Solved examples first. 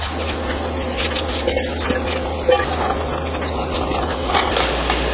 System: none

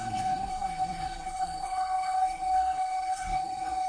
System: codec, SNAC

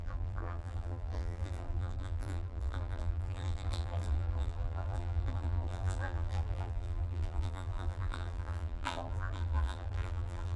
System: vocoder, BigVGAN v2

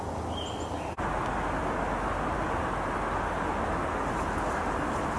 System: none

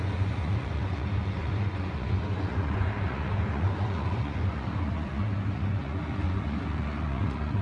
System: vocoder, Vocos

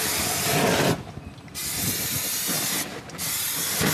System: none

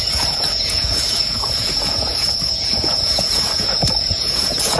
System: vocoder, Vocos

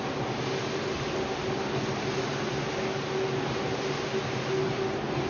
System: none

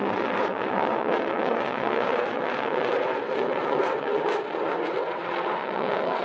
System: vocoder, WaveNeXt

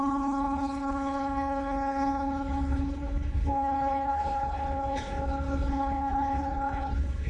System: codec, HILCodec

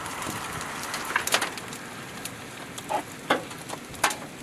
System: none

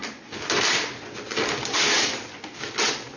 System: none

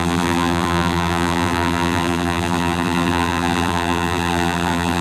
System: vocoder, BigVGAN v2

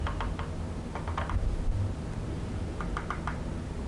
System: none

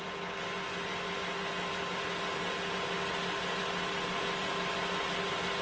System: none